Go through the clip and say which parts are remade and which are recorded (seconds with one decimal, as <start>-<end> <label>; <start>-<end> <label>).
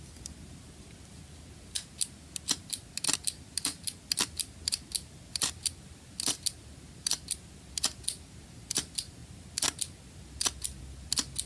0.0-11.5 recorded